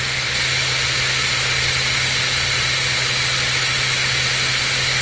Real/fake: real